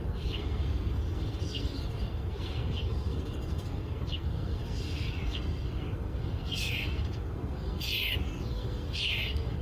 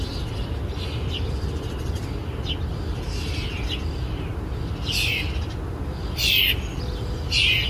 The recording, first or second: second